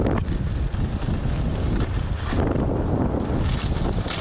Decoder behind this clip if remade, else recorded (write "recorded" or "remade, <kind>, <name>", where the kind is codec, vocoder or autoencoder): recorded